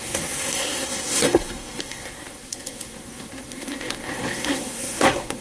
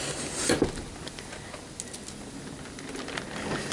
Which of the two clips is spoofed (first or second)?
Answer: first